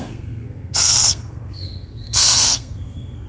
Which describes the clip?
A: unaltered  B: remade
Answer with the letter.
B